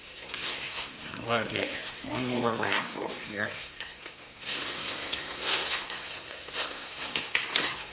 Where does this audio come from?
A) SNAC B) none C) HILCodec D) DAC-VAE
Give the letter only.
A